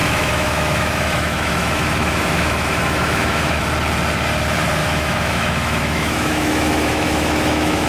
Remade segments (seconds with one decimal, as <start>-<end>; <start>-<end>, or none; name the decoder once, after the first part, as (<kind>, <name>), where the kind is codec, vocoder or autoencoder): 0.0-3.6 (autoencoder, DAC-VAE); 4.8-7.9